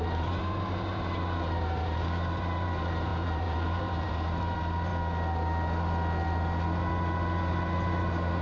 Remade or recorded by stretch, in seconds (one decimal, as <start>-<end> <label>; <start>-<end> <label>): 0.0-4.9 remade; 4.9-7.5 recorded; 7.5-8.4 remade